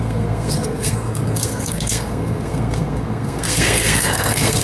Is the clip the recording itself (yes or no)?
no